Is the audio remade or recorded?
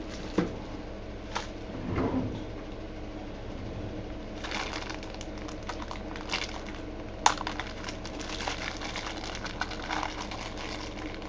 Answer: recorded